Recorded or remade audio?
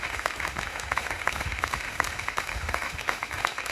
remade